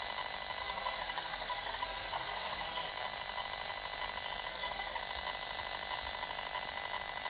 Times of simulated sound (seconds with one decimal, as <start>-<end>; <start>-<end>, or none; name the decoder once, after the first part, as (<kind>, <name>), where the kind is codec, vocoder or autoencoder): 0.6-2.9 (codec, SNAC); 4.5-5.0